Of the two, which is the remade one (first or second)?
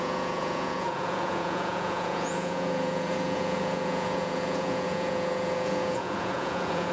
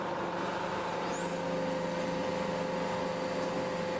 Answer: first